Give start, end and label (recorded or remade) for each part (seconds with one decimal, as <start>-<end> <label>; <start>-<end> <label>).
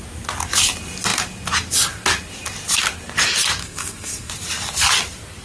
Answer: 0.0-3.6 recorded; 3.6-4.3 remade; 4.3-5.4 recorded